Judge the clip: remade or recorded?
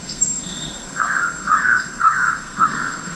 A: remade